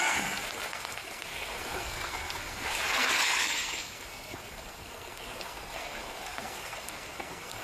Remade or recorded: remade